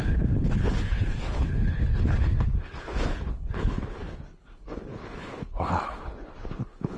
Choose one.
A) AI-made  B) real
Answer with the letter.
A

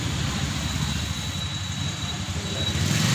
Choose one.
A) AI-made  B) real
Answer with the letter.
B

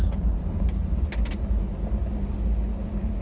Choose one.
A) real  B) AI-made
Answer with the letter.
A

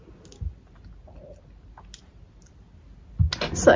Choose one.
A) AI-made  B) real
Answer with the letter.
B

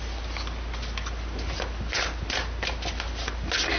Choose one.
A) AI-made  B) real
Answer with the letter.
B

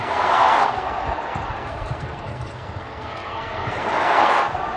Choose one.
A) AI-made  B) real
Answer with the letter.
A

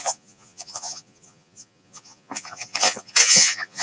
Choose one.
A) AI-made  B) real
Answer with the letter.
A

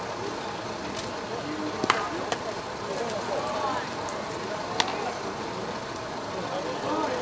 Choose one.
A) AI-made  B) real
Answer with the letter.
B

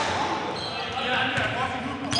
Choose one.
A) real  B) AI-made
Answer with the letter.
A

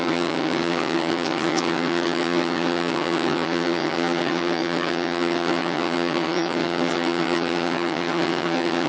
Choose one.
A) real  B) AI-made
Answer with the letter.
B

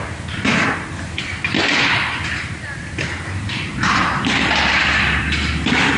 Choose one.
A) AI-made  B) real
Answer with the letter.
A